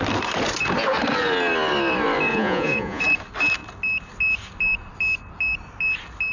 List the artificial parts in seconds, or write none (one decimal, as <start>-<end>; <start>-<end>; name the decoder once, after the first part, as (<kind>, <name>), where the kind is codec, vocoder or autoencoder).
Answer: 2.3-3.0 (vocoder, Vocos)